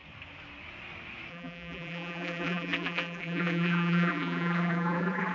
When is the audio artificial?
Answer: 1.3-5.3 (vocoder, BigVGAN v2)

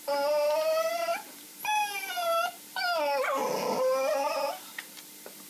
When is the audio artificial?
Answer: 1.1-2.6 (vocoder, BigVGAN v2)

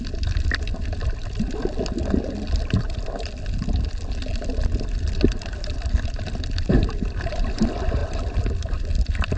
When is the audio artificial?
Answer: 0.7-2.0 (vocoder, BigVGAN v2); 4.3-7.6; 8.0-9.0

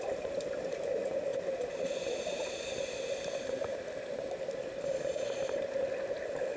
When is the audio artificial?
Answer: none

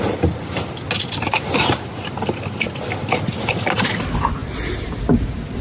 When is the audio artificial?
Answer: none

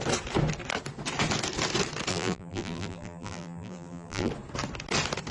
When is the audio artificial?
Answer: 2.1-4.3 (vocoder, BigVGAN v2)

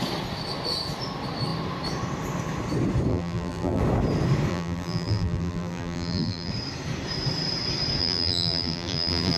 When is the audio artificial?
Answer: 3.1-3.8 (vocoder, BigVGAN v2); 4.5-6.5; 8.0-9.4